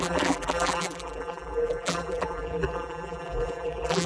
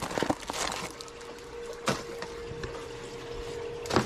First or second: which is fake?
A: first